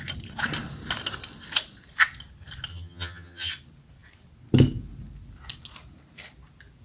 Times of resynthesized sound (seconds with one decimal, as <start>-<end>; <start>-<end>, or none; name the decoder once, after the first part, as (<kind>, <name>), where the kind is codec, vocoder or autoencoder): 2.7-3.5 (vocoder, HiFi-GAN)